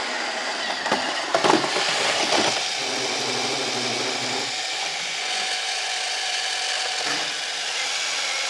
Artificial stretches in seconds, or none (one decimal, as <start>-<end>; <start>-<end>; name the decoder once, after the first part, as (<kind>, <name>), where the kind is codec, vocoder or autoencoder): 4.9-6.5 (vocoder, Vocos)

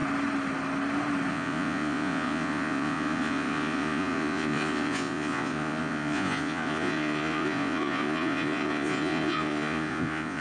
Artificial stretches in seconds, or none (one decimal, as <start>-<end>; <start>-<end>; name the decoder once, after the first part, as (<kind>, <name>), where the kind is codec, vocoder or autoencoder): 1.3-10.4 (vocoder, Vocos)

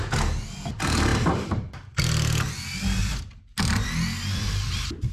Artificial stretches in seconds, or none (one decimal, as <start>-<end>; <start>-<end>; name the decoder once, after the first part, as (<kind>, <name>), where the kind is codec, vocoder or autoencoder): 1.1-3.0 (vocoder, BigVGAN v2)

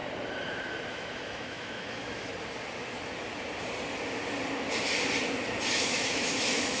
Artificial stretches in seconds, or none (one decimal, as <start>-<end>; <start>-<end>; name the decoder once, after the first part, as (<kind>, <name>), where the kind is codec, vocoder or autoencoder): 0.9-2.3 (autoencoder, DAC-VAE); 5.7-6.8